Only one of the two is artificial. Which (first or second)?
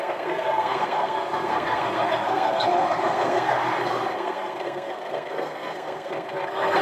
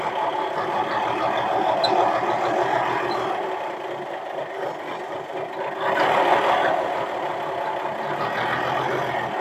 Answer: first